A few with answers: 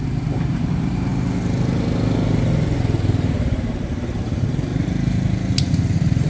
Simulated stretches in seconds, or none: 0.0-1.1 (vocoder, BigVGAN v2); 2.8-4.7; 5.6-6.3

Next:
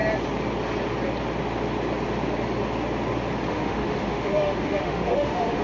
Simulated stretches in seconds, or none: 3.5-5.6 (autoencoder, DAC-VAE)